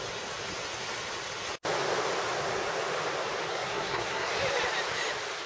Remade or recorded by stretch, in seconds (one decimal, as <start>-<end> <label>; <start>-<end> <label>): 0.0-3.5 recorded; 3.5-4.3 remade; 4.3-5.5 recorded